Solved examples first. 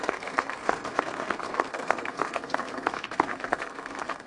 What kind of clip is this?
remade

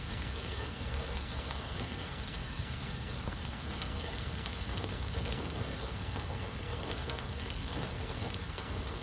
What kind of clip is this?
remade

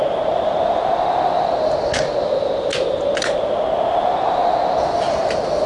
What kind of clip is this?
recorded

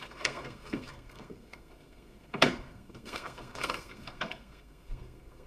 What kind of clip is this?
remade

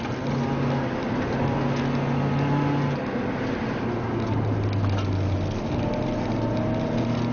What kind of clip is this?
recorded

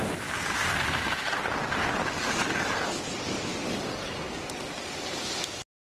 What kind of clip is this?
recorded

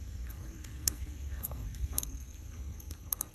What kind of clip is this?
remade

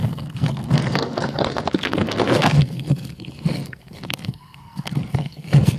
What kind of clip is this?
remade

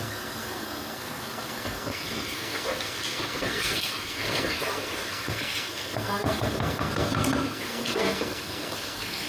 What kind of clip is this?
remade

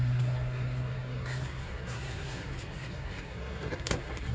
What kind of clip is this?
remade